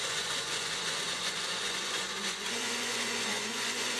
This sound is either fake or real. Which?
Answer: fake